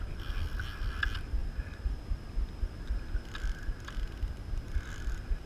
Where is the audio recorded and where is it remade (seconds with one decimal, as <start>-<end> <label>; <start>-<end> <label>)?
0.0-5.5 recorded